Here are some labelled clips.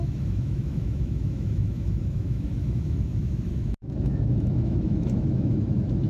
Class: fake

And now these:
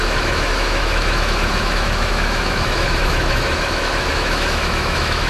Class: fake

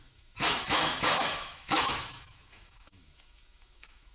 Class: fake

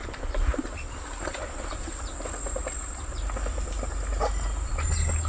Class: real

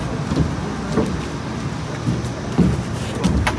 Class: real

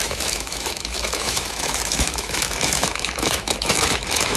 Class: fake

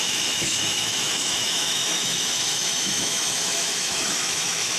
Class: fake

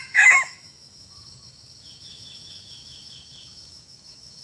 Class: fake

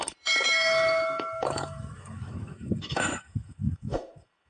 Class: fake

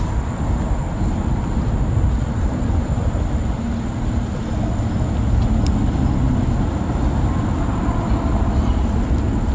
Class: real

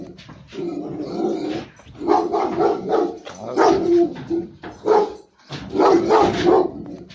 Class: real